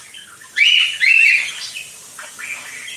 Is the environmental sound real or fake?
real